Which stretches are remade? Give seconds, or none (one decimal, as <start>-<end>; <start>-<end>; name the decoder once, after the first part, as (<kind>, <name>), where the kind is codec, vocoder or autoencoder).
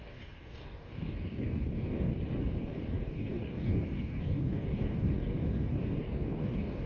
0.0-2.1 (codec, DAC); 2.6-6.9